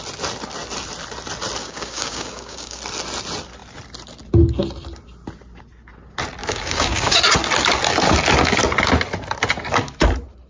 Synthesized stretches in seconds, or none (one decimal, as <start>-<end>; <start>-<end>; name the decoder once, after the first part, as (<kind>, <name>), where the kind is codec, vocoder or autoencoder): 1.6-2.8 (codec, DAC); 6.4-7.2